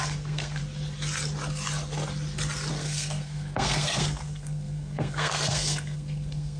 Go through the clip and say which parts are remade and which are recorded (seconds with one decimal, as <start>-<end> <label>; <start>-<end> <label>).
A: 0.0-0.6 remade; 0.6-2.7 recorded; 2.7-6.6 remade